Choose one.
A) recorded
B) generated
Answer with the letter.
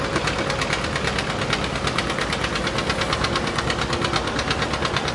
A